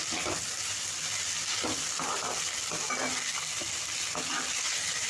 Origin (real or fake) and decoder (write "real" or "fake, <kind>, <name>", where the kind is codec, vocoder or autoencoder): real